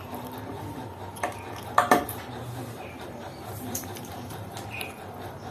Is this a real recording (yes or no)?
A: no